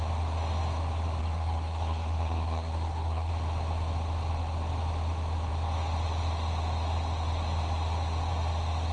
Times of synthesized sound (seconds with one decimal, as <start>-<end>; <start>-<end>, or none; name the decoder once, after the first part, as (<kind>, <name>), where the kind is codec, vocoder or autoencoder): 1.2-3.3 (codec, SNAC)